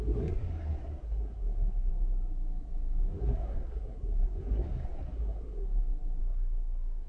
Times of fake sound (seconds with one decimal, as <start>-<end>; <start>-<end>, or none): 0.0-1.9; 3.2-5.6; 6.2-7.1